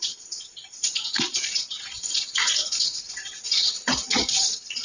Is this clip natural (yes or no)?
no